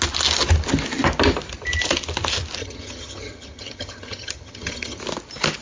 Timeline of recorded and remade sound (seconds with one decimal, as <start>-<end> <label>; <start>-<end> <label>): 0.0-2.6 recorded; 2.6-5.0 remade; 5.0-5.6 recorded